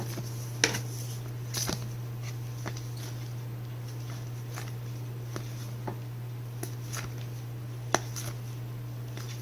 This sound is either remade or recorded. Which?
recorded